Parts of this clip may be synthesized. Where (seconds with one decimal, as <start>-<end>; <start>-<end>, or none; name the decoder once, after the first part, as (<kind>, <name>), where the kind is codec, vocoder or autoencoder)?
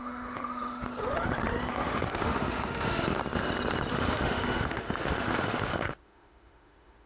0.0-0.9 (autoencoder, DAC-VAE); 1.7-3.2; 3.9-7.1